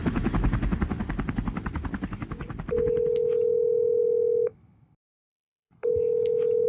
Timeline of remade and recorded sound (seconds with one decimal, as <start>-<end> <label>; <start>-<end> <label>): 0.0-5.3 recorded; 5.3-5.9 remade; 5.9-6.7 recorded

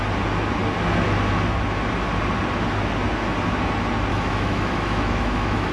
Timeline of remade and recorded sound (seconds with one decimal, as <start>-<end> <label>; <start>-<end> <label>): 0.0-4.1 recorded; 4.1-5.7 remade

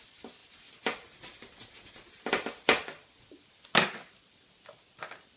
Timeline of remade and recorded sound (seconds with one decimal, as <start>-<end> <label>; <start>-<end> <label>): 0.0-5.4 recorded

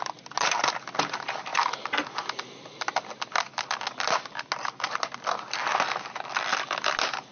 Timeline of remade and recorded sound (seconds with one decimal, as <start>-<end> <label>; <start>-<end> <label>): 0.0-7.3 recorded

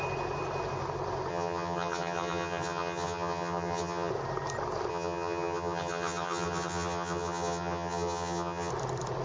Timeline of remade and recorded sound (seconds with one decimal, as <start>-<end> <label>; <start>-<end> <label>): 0.0-1.3 recorded; 1.3-4.1 remade; 4.1-4.9 recorded; 4.9-8.7 remade; 8.7-9.2 recorded